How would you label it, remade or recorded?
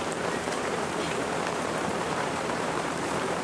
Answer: remade